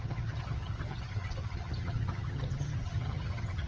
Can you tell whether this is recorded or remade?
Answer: remade